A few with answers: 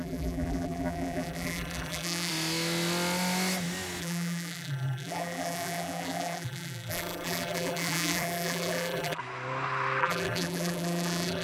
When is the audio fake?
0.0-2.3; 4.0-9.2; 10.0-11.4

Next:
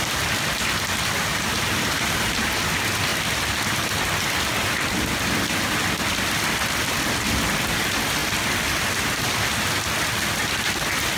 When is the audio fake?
1.3-2.5

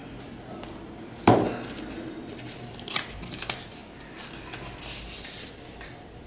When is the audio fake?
1.9-3.8

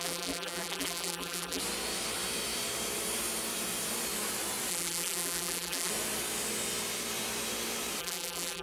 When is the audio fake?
0.0-1.6; 4.7-5.9; 8.0-8.6

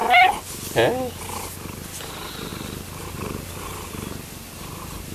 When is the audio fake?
2.5-3.5

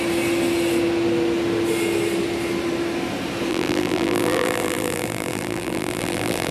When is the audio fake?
3.5-6.5

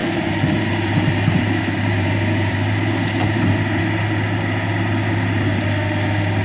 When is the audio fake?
0.0-3.8

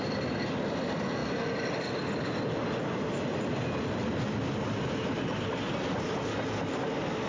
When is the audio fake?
none